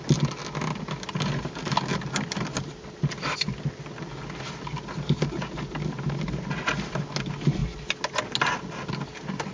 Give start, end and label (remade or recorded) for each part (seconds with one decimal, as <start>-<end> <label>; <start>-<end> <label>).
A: 0.0-9.5 recorded